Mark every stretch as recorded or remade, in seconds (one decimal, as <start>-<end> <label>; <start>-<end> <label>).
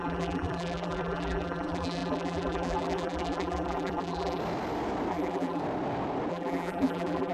0.0-4.4 remade; 4.4-5.1 recorded; 5.1-5.6 remade; 5.6-6.3 recorded; 6.3-7.3 remade